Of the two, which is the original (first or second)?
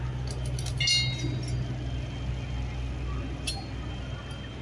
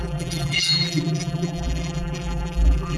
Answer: first